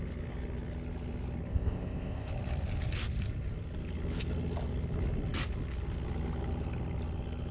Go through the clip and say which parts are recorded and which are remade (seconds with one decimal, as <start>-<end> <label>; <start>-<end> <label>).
0.0-1.5 recorded; 1.5-2.3 remade; 2.3-7.5 recorded